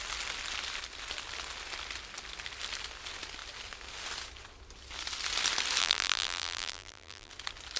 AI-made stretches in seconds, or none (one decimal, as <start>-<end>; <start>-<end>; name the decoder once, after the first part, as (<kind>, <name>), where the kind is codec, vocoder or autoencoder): 5.8-7.3 (vocoder, BigVGAN v2)